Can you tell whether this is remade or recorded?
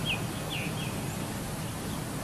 recorded